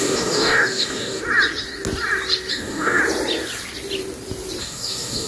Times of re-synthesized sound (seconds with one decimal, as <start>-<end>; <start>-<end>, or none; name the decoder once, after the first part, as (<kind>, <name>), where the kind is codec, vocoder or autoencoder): 0.0-1.2 (codec, DAC); 2.5-3.0; 4.6-5.3